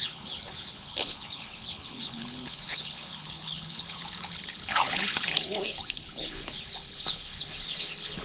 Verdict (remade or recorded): remade